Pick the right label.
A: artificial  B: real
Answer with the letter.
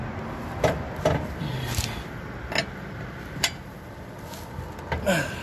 B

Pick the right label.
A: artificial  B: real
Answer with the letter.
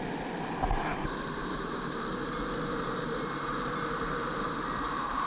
B